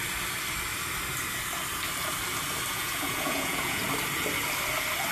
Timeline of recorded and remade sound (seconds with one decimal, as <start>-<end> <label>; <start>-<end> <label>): 0.0-2.7 recorded; 2.7-3.8 remade; 3.8-5.1 recorded